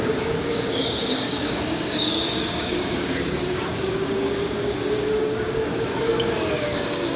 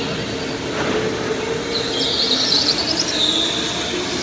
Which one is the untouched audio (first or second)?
second